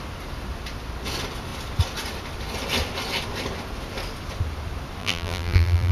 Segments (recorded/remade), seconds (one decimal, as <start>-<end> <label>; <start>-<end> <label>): 0.0-5.0 recorded; 5.0-5.9 remade